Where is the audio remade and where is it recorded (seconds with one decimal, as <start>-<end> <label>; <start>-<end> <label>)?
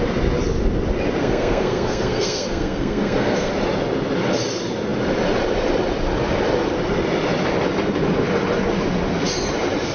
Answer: 0.0-1.2 recorded; 1.2-3.5 remade; 3.5-9.9 recorded